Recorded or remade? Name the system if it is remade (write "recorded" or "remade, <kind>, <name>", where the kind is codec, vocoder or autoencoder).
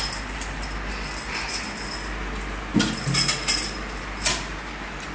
recorded